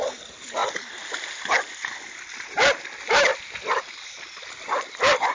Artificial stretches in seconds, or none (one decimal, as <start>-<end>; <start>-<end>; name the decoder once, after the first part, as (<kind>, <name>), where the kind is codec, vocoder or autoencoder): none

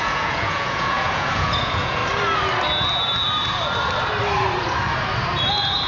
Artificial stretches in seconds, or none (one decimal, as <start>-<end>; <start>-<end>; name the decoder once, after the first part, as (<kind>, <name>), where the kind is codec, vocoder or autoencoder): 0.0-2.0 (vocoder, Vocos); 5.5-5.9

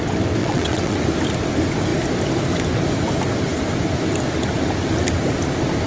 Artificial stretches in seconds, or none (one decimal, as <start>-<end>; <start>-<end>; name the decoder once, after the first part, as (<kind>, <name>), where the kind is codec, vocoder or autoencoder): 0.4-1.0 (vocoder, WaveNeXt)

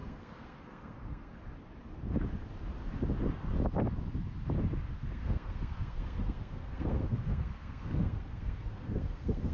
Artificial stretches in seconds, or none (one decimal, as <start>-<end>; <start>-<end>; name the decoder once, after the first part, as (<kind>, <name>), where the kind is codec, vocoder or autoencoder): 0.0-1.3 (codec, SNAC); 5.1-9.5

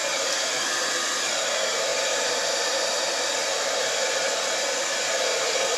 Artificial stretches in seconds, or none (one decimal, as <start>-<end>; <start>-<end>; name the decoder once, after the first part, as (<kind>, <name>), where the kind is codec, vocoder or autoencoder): none

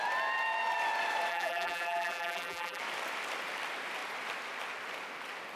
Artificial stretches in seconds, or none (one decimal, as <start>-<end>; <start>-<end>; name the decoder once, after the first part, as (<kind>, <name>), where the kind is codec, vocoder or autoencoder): 1.3-2.8 (vocoder, BigVGAN v2)